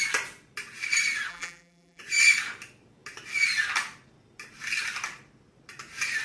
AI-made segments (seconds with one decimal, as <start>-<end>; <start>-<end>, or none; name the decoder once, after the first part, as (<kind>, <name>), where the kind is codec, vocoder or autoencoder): 1.3-2.0 (vocoder, BigVGAN v2)